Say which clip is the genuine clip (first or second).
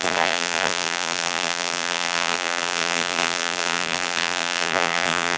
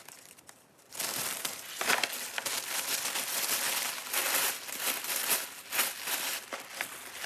second